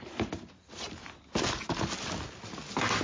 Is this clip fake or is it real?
real